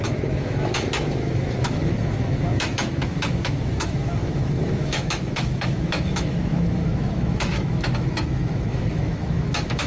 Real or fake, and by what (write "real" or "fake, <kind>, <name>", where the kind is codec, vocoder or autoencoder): fake, autoencoder, DAC-VAE